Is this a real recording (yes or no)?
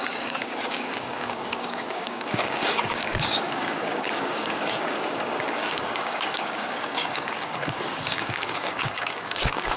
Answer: no